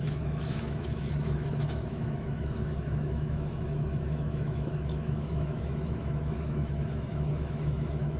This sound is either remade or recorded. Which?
remade